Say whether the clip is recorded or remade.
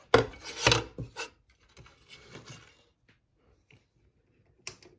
recorded